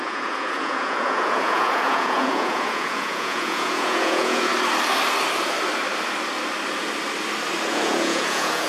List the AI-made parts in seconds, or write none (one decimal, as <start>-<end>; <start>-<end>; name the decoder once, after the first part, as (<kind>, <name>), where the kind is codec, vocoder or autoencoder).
0.0-4.5 (vocoder, Vocos); 7.7-8.7